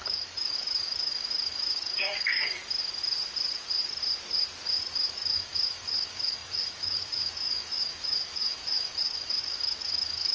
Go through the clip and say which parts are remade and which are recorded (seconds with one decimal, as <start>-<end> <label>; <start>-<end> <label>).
0.0-2.6 remade; 2.6-4.8 recorded; 4.8-10.3 remade